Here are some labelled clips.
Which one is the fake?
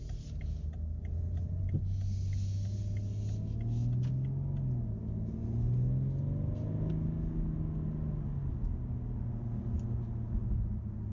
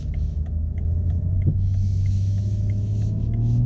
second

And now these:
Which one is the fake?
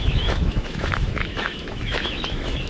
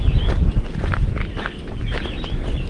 first